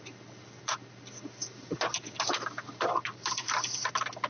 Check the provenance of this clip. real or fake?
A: real